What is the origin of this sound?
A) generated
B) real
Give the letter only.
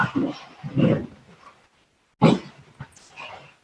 B